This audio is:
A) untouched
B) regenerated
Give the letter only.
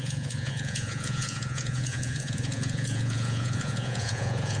B